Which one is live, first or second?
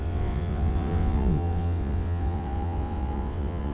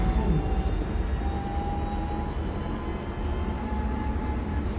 second